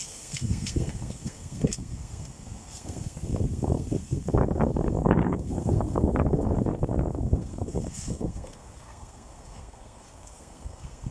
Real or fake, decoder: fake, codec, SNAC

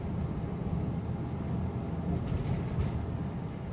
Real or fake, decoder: real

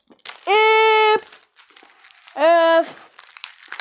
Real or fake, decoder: real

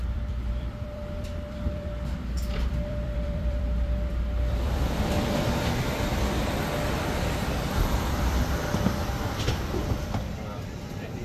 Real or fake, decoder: fake, vocoder, BigVGAN v2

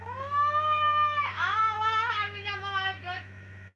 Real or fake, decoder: fake, autoencoder, DAC-VAE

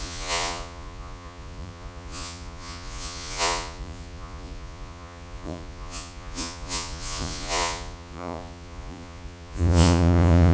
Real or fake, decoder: fake, vocoder, Vocos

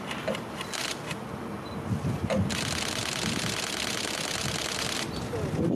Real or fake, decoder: real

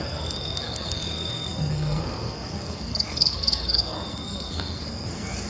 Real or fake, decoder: fake, codec, SNAC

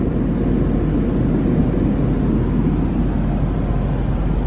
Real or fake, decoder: real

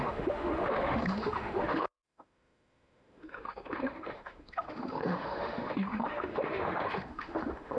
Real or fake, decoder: fake, autoencoder, DAC-VAE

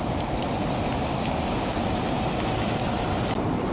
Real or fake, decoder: real